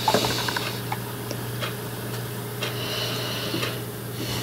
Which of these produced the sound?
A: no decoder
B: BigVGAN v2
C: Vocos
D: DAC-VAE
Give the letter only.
A